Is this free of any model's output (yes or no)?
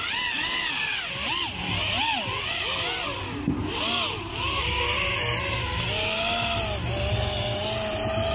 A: yes